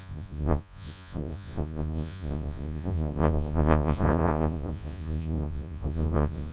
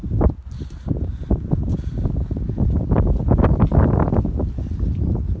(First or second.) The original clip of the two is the second